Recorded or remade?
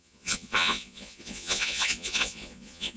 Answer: remade